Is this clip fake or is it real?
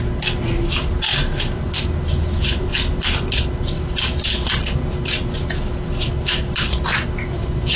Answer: real